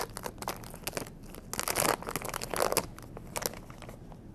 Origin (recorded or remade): recorded